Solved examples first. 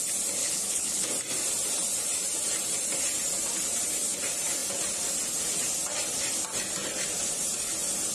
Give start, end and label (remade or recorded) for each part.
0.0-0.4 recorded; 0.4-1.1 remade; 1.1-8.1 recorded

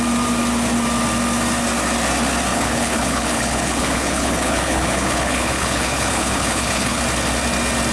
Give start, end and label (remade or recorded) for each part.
0.0-2.5 recorded; 2.5-7.0 remade; 7.0-7.9 recorded